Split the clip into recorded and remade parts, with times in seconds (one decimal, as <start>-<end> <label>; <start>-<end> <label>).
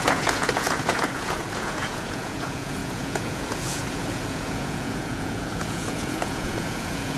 0.0-7.2 remade